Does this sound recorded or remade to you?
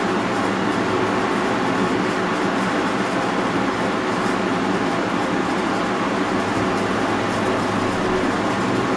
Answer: recorded